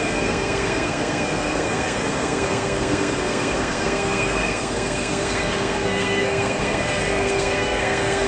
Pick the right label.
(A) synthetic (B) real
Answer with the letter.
A